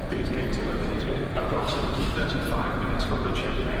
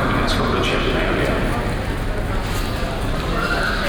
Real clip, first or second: second